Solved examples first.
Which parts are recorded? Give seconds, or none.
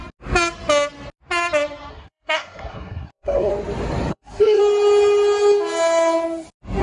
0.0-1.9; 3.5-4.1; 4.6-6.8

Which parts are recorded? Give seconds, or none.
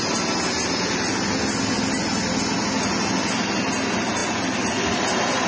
0.0-5.5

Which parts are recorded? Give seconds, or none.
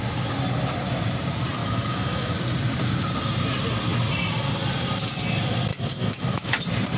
0.0-1.6; 2.3-5.7; 6.6-7.0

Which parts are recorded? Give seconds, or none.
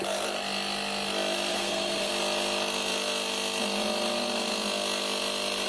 0.0-1.5; 2.1-5.7